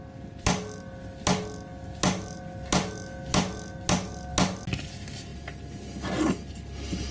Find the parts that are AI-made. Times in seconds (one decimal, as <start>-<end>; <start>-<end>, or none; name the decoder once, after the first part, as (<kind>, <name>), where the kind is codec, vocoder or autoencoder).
none